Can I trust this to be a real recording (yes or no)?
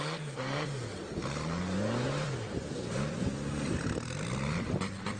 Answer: yes